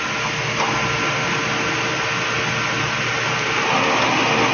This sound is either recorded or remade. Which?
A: recorded